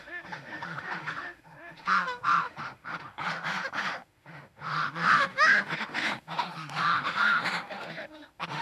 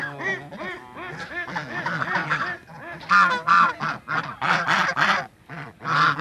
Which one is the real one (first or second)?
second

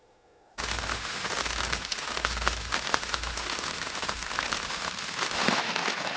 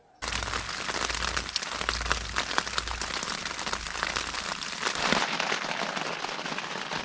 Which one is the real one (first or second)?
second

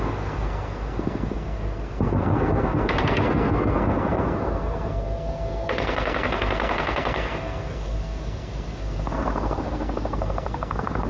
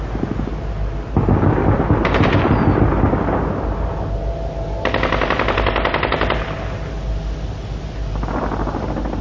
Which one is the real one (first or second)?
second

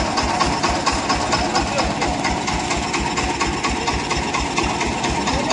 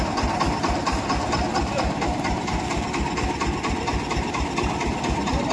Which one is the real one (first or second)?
first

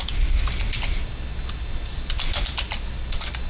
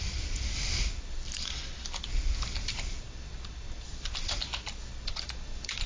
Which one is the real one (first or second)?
first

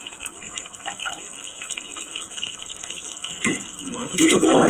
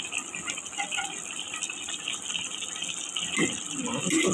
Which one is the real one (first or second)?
second